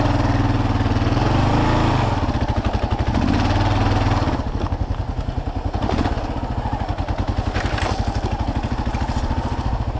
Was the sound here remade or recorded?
recorded